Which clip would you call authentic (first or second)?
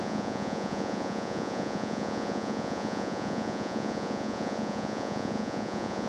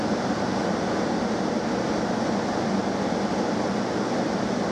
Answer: second